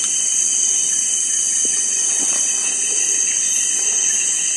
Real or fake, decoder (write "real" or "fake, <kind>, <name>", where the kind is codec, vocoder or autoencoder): real